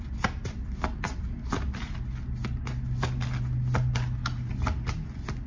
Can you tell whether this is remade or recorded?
recorded